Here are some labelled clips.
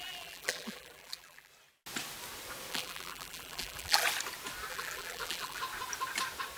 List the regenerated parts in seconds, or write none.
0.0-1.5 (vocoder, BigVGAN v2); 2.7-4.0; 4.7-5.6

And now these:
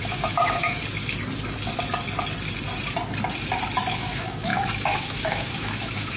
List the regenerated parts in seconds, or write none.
0.0-0.8 (autoencoder, DAC-VAE); 3.9-6.2

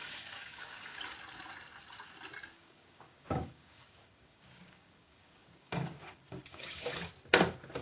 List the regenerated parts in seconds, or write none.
0.0-1.0 (codec, DAC); 2.5-7.0

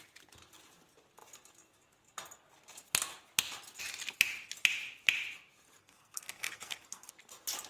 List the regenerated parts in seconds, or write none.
5.8-7.1 (codec, SNAC)

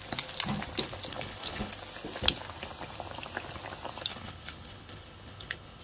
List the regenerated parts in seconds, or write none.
1.1-1.7 (codec, HILCodec); 4.1-5.8